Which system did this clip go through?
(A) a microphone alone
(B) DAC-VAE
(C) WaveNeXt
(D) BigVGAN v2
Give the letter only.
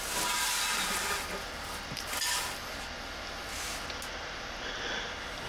A